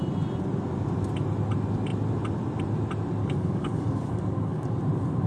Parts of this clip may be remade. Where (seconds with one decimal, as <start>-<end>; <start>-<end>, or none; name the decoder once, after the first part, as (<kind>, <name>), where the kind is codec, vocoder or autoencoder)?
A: 3.2-4.8 (codec, DAC)